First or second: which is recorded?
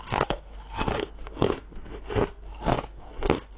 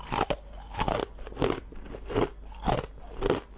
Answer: second